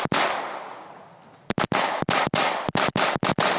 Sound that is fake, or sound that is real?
real